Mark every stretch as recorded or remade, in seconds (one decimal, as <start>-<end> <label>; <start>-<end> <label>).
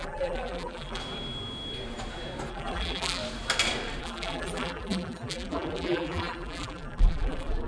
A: 0.0-1.0 remade; 1.0-2.5 recorded; 2.5-3.2 remade; 3.2-4.0 recorded; 4.0-7.7 remade